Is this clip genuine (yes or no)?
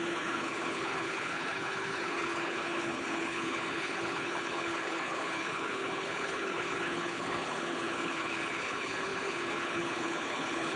no